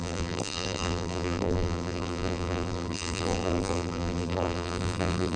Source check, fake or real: fake